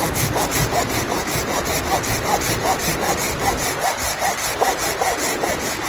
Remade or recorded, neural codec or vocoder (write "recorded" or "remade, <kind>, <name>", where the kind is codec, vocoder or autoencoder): recorded